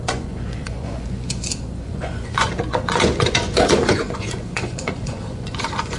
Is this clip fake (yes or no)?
yes